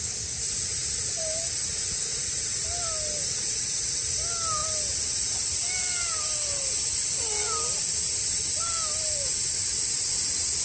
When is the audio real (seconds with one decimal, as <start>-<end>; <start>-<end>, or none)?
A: 0.0-10.6